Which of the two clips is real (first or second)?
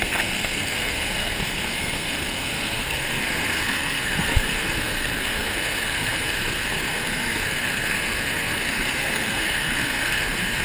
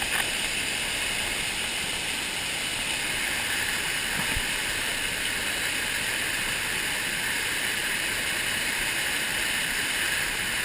second